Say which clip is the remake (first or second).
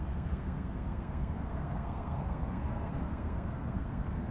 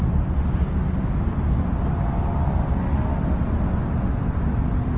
first